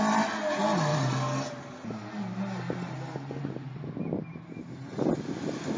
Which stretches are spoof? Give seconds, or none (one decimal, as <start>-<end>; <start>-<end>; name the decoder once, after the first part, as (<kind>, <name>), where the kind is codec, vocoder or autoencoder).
none